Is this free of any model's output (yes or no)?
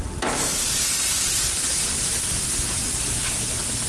yes